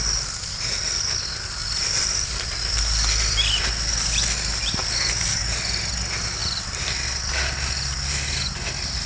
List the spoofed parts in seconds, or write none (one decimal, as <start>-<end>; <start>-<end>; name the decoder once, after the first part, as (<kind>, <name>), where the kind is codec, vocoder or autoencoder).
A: 1.6-3.6 (vocoder, BigVGAN v2); 6.4-7.0